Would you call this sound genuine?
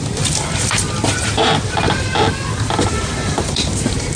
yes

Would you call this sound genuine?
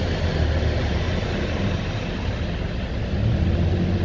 yes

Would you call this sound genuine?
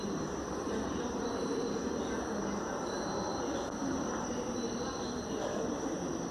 no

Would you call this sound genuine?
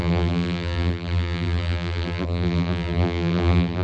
no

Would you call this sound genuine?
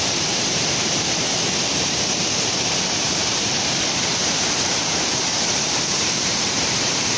no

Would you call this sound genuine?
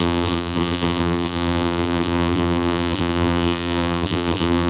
no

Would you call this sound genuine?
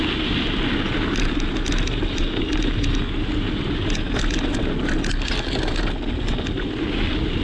yes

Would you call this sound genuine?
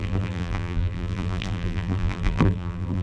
no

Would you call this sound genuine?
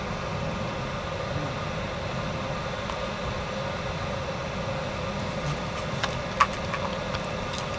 yes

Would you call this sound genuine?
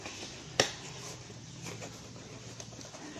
yes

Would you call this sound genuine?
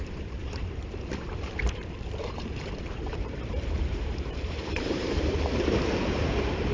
no